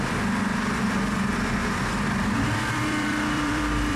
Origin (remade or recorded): remade